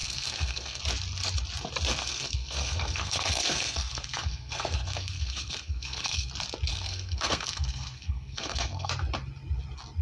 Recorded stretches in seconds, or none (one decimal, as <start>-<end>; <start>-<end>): 0.8-2.0; 6.3-6.7; 8.9-10.0